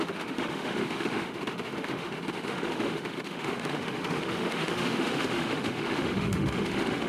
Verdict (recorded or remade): remade